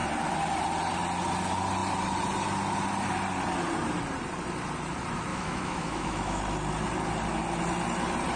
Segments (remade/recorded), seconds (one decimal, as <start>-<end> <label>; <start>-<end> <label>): 0.0-5.3 recorded; 5.3-6.4 remade; 6.4-8.4 recorded